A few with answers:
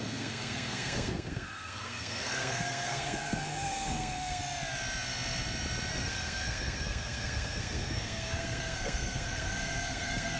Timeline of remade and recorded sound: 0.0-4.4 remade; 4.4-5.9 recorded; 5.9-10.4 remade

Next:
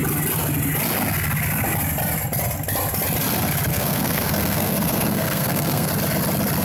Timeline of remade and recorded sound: 0.0-3.7 recorded; 3.7-5.9 remade; 5.9-6.6 recorded

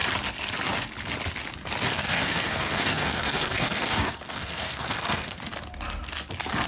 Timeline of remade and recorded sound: 0.0-1.9 recorded; 1.9-5.4 remade; 5.4-6.7 recorded

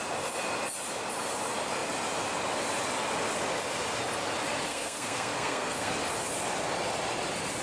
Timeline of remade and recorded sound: 0.0-4.7 recorded; 4.7-5.9 remade; 5.9-7.6 recorded

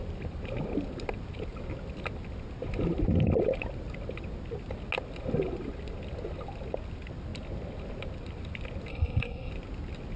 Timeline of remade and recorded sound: 0.0-8.9 recorded; 8.9-9.5 remade; 9.5-10.2 recorded